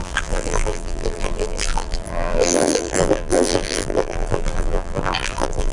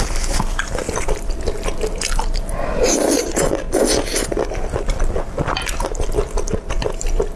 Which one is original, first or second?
second